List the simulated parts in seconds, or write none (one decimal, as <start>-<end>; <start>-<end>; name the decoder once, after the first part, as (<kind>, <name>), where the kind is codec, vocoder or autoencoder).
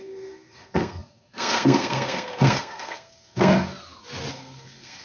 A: 0.0-3.7 (codec, SNAC); 4.3-5.0